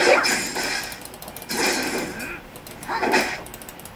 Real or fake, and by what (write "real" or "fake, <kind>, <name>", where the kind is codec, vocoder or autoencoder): real